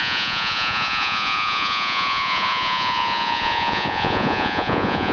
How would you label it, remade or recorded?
remade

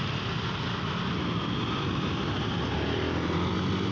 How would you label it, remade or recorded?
recorded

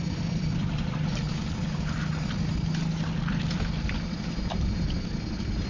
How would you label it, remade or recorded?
recorded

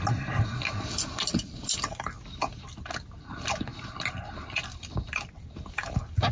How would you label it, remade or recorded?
recorded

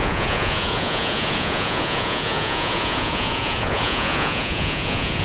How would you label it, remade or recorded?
remade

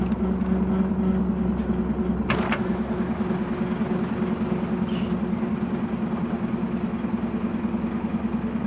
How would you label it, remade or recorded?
recorded